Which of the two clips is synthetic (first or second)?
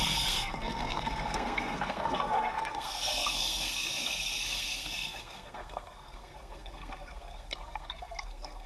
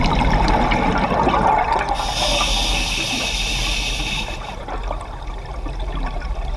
first